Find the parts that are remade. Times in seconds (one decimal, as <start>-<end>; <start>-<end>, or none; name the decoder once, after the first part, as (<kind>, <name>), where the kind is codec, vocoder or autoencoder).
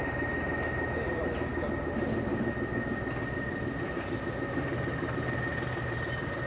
none